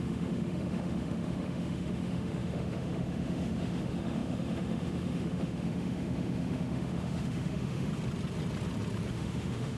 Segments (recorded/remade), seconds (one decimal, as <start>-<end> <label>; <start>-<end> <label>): 0.0-7.9 remade; 7.9-9.1 recorded; 9.1-9.8 remade